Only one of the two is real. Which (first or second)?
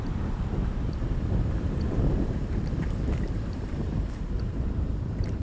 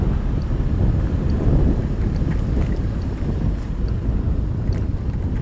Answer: second